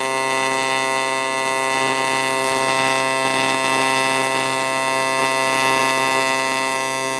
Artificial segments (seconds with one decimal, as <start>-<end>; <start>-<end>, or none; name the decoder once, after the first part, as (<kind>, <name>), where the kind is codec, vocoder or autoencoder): none